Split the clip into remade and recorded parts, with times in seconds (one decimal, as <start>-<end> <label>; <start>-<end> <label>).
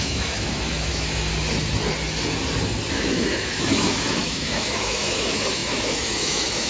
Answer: 0.0-1.3 remade; 1.3-2.9 recorded; 2.9-6.7 remade